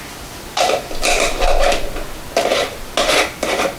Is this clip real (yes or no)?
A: yes